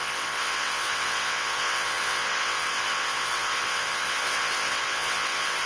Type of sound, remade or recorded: remade